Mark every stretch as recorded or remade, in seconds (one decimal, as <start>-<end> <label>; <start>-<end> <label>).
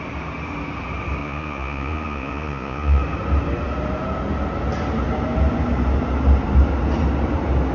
0.0-1.2 recorded; 1.2-3.0 remade; 3.0-7.7 recorded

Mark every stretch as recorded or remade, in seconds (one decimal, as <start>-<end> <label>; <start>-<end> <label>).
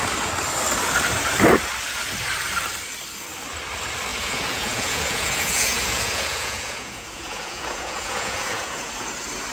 0.0-4.1 recorded; 4.1-8.9 remade; 8.9-9.5 recorded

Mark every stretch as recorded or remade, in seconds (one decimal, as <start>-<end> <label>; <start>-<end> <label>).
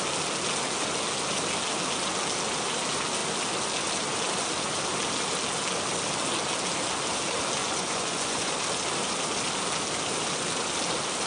0.0-7.6 recorded; 7.6-8.6 remade; 8.6-11.3 recorded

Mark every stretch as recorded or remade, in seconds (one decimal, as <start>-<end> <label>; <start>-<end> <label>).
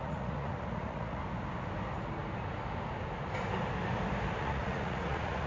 0.0-1.2 remade; 1.2-4.4 recorded; 4.4-5.5 remade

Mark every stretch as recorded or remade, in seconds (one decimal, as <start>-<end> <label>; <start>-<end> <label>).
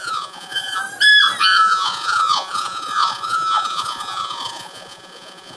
0.0-0.8 remade; 0.8-1.4 recorded; 1.4-5.6 remade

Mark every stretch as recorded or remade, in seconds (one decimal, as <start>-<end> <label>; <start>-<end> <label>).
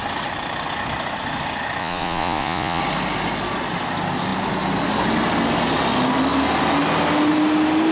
0.0-1.8 recorded; 1.8-2.8 remade; 2.8-7.9 recorded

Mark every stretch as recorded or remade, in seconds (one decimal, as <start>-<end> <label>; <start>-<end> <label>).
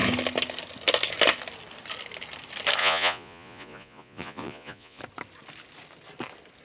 0.0-2.8 recorded; 2.8-5.0 remade; 5.0-6.6 recorded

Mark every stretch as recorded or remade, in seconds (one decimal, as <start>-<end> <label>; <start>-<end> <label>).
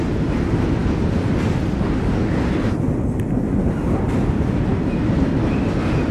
0.0-6.1 recorded